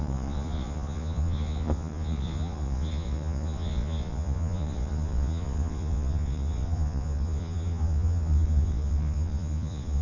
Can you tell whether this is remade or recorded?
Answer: remade